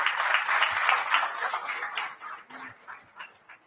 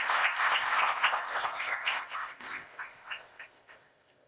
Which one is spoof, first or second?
second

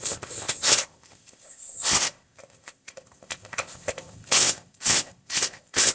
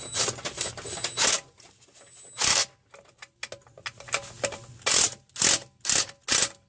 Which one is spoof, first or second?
first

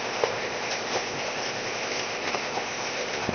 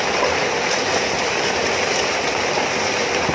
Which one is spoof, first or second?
first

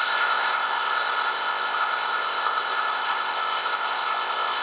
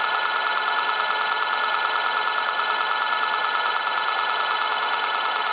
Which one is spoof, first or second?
first